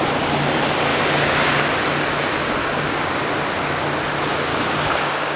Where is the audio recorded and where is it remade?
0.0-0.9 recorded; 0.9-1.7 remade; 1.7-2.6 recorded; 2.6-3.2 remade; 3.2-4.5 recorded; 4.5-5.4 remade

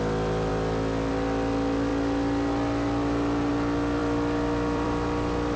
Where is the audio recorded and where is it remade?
0.0-4.0 recorded; 4.0-5.6 remade

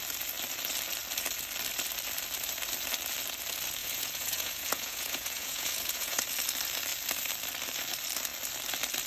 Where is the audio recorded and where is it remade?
0.0-3.8 recorded; 3.8-6.2 remade; 6.2-9.1 recorded